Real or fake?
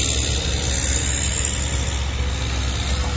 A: real